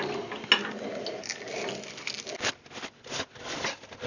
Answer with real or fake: real